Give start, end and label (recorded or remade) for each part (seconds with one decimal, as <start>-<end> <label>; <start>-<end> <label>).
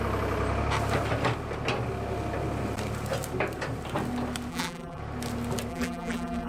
0.0-4.5 recorded; 4.5-5.0 remade; 5.0-5.7 recorded; 5.7-6.5 remade